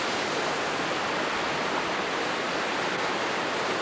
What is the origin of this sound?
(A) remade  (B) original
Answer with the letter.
B